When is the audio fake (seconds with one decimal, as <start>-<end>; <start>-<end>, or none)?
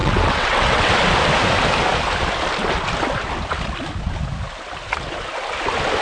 0.0-0.9